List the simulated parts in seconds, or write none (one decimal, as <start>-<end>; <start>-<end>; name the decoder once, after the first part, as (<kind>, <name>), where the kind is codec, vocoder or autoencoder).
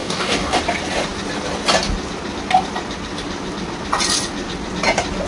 0.0-0.6 (codec, DAC)